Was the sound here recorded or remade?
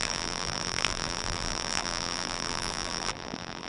remade